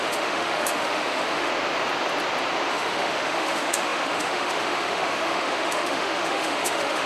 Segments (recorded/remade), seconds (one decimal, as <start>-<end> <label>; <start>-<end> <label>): 0.0-1.5 remade; 1.5-2.7 recorded; 2.7-7.1 remade